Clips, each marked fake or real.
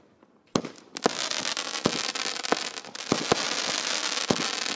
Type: real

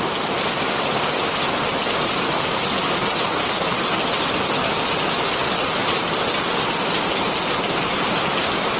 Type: real